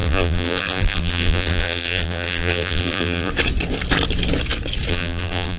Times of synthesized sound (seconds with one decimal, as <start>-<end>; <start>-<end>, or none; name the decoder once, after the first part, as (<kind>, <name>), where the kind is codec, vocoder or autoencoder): 0.0-3.3 (vocoder, BigVGAN v2); 4.9-5.6